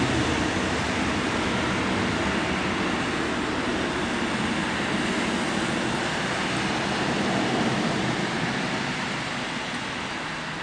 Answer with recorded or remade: recorded